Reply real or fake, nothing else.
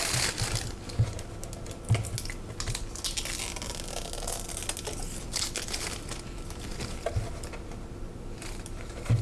real